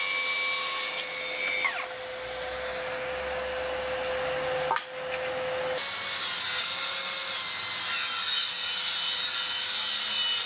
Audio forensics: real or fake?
real